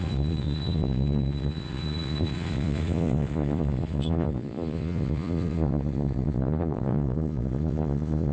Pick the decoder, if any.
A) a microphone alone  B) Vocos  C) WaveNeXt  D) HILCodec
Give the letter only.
B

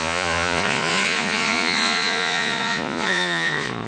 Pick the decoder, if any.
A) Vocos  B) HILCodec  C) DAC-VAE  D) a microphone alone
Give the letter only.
A